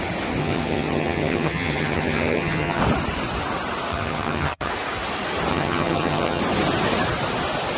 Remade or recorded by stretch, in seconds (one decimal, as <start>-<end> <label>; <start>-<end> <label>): 0.0-0.4 recorded; 0.4-2.8 remade; 2.8-3.9 recorded; 3.9-4.7 remade; 4.7-5.5 recorded; 5.5-6.4 remade; 6.4-7.8 recorded